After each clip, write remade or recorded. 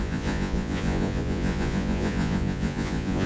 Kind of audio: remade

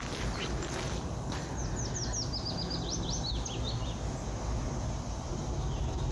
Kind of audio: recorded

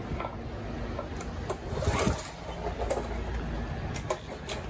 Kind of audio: recorded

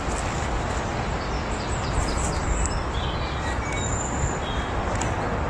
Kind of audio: recorded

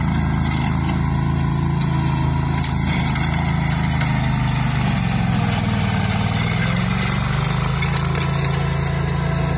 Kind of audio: recorded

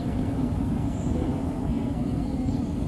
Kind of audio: remade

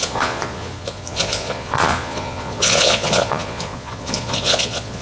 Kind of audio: remade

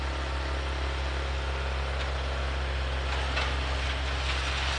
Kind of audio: recorded